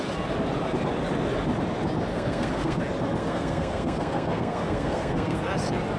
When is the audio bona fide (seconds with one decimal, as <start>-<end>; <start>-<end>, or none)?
0.0-2.1; 2.8-3.2; 5.5-6.0